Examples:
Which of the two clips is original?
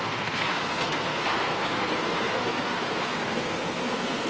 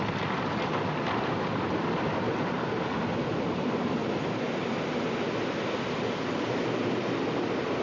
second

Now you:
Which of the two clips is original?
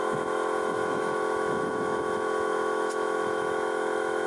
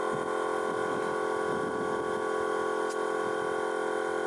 second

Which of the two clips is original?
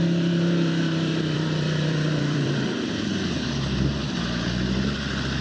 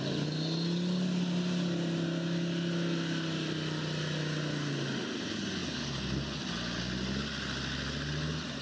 second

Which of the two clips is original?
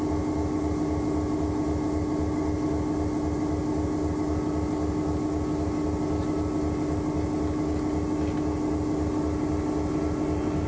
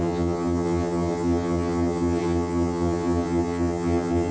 first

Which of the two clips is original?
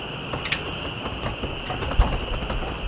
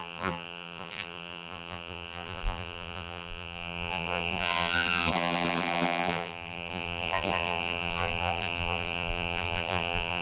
first